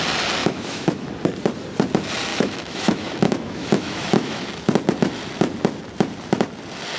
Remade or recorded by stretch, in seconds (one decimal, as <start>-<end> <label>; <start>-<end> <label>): 0.0-0.4 recorded; 0.4-1.1 remade; 1.1-2.3 recorded; 2.3-4.5 remade; 4.5-7.0 recorded